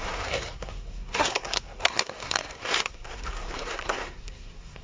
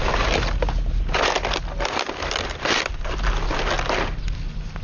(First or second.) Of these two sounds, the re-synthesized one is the first